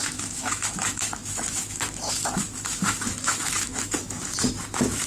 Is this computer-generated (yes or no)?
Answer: yes